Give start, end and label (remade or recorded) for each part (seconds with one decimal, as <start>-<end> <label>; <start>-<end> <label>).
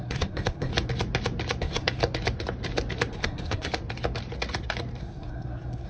0.0-0.7 remade; 0.7-1.6 recorded; 1.6-2.0 remade; 2.0-3.1 recorded; 3.1-3.7 remade; 3.7-5.0 recorded; 5.0-5.9 remade